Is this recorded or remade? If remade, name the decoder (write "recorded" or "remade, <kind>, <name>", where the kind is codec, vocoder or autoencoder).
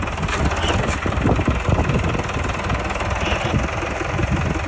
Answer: recorded